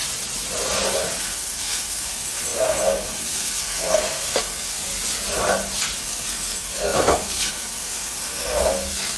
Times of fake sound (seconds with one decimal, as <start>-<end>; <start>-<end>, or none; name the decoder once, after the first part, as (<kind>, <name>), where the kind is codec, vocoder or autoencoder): 1.2-4.9 (codec, SNAC); 6.0-9.2